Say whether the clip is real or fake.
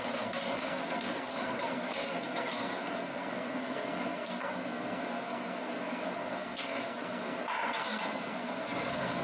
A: fake